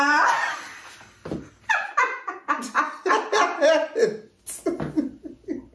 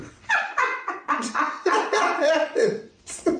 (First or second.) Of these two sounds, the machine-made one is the second